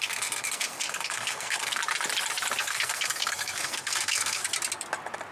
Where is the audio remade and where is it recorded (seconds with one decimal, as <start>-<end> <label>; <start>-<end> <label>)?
0.0-1.8 remade; 1.8-2.6 recorded; 2.6-4.4 remade; 4.4-5.3 recorded